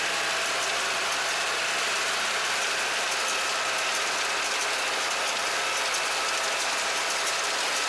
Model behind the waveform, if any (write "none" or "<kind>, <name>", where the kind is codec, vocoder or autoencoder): none